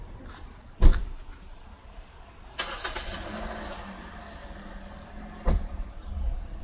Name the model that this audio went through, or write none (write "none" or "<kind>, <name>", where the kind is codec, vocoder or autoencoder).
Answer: none